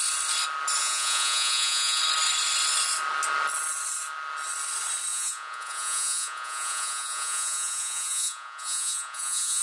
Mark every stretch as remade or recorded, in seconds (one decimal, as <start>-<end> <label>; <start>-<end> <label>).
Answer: 0.0-0.8 recorded; 0.8-2.0 remade; 2.0-5.1 recorded; 5.1-9.6 remade